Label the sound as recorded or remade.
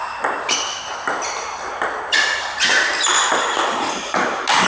recorded